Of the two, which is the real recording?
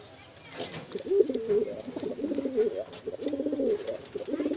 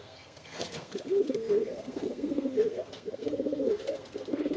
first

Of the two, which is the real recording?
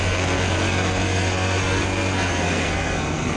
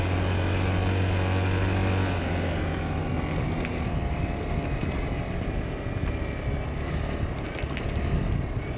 second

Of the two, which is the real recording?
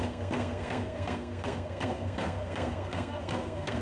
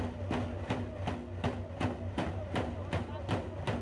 second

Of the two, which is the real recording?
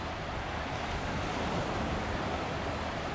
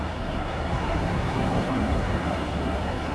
first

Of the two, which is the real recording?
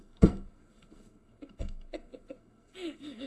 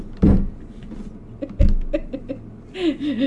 second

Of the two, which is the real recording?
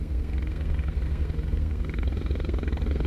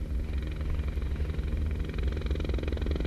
second